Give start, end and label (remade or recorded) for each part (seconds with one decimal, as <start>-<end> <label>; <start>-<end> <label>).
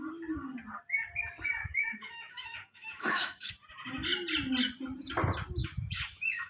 0.0-1.6 recorded; 1.6-3.5 remade; 3.5-5.6 recorded; 5.6-6.5 remade